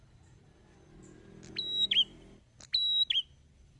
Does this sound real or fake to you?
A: real